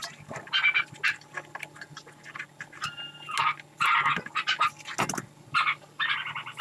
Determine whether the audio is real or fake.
real